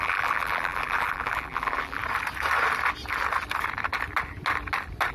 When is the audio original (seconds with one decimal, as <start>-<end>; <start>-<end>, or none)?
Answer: 2.0-5.1